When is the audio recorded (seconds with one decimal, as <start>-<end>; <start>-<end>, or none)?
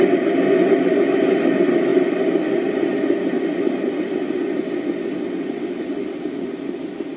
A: 0.0-7.2